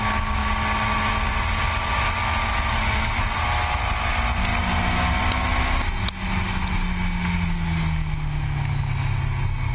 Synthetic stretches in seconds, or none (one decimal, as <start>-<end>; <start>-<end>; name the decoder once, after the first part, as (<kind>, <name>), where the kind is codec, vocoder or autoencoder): none